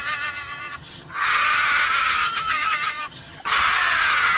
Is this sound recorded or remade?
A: remade